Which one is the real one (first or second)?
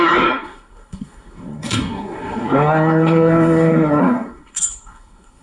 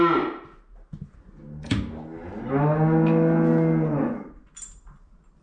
second